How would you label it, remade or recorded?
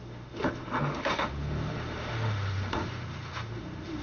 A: remade